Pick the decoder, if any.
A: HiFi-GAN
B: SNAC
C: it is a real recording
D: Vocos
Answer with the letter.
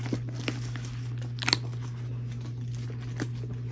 C